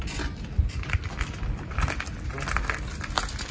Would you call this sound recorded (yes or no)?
yes